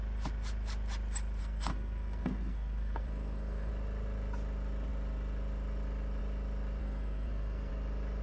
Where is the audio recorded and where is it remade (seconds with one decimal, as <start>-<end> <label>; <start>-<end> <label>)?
0.0-1.4 recorded; 1.4-3.7 remade; 3.7-6.8 recorded; 6.8-7.7 remade; 7.7-8.2 recorded